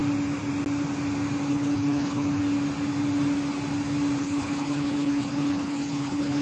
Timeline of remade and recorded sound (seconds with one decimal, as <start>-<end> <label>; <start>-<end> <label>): 0.0-1.5 recorded; 1.5-2.4 remade; 2.4-4.2 recorded; 4.2-6.4 remade